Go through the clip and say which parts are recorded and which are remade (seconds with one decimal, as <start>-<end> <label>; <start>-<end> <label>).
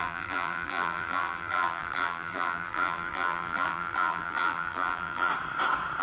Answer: 0.0-5.3 remade; 5.3-6.0 recorded